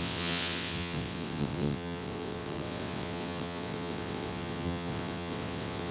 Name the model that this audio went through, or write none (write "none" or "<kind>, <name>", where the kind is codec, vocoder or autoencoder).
vocoder, WaveNeXt